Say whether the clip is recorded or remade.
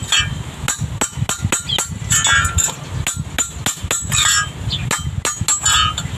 recorded